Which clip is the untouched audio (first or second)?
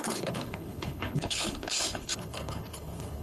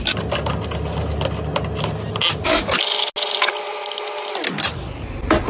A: second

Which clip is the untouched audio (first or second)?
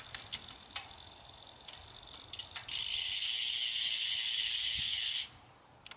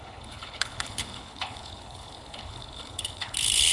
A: first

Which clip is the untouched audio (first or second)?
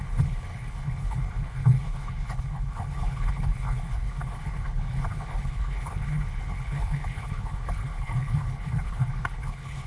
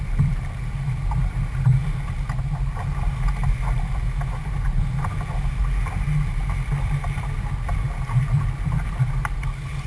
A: second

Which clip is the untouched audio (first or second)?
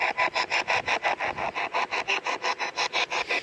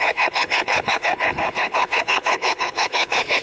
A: first